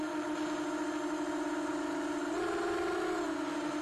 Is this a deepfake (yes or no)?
no